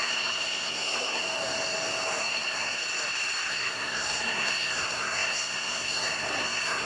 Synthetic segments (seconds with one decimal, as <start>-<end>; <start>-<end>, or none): 0.0-1.2; 2.2-2.8; 3.5-6.9